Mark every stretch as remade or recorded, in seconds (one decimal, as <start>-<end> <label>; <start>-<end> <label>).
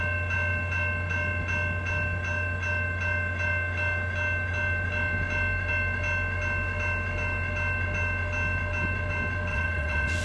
0.0-9.5 recorded; 9.5-10.2 remade